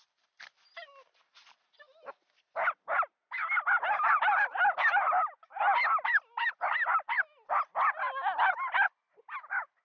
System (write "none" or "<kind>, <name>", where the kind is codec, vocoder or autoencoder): none